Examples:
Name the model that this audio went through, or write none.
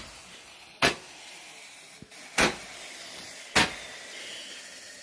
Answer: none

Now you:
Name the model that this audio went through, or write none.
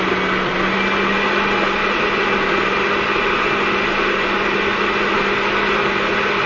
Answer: none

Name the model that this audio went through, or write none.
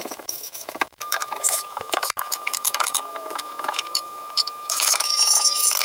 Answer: autoencoder, DAC-VAE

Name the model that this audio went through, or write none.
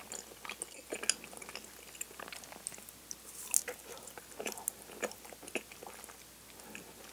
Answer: none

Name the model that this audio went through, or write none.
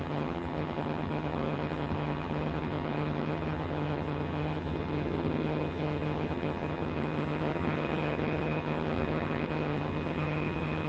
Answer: vocoder, HiFi-GAN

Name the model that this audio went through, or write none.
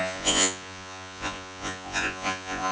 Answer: vocoder, Vocos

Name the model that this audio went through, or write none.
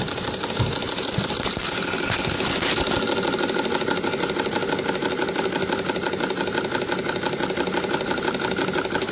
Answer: none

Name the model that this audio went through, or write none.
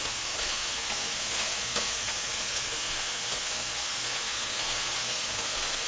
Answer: codec, SNAC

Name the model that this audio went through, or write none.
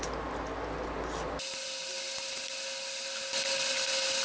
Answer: none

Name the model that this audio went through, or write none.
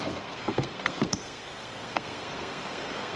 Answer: codec, SNAC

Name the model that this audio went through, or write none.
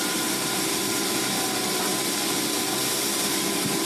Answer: none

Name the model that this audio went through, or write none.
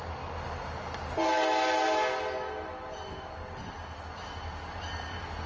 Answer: none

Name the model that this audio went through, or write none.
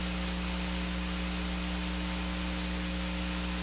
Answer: none